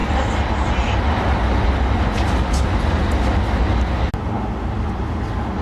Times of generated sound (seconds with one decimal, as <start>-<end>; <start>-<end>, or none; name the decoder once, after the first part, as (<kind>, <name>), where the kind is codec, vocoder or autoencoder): none